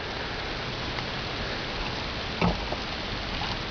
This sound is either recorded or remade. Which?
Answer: recorded